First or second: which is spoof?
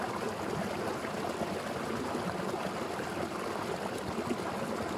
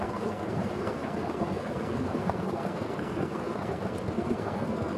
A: second